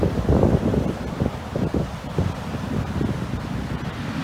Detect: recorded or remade recorded